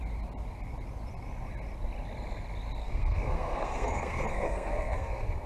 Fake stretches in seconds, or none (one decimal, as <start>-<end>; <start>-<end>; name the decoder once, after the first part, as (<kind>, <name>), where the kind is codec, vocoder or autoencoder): 2.8-5.5 (codec, SNAC)